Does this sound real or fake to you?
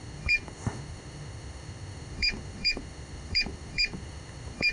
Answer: fake